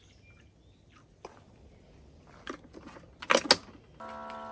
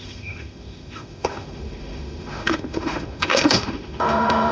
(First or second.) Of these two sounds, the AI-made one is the second